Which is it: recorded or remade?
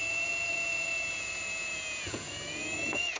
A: remade